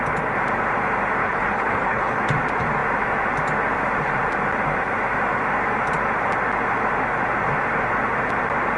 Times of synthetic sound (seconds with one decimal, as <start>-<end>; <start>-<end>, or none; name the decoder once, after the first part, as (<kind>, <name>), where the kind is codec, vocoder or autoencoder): 1.2-2.2 (codec, HILCodec)